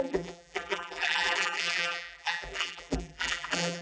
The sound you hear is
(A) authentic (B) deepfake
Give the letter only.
B